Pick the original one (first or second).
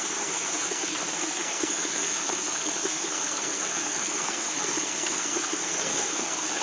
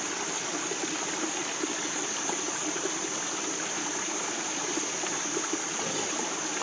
second